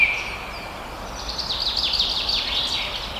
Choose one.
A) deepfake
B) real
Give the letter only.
B